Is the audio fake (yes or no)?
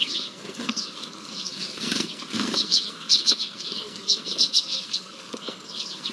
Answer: yes